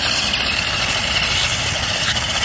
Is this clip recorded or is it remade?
recorded